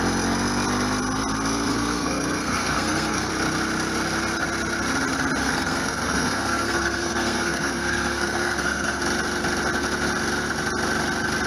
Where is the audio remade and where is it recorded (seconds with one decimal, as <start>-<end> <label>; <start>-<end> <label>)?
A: 0.0-1.7 recorded; 1.7-3.3 remade; 3.3-5.4 recorded; 5.4-9.0 remade; 9.0-11.5 recorded